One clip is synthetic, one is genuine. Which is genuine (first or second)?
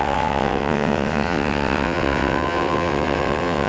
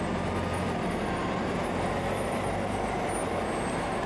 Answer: second